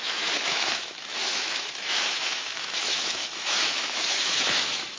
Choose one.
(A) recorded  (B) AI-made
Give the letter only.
B